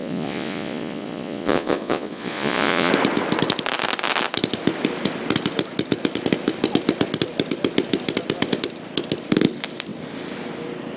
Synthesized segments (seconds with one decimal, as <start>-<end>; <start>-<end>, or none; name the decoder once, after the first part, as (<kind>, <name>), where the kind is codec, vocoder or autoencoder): 0.0-2.9 (vocoder, Vocos)